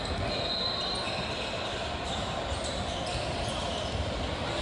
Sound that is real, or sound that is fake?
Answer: real